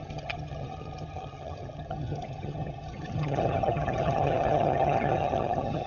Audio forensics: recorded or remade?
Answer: remade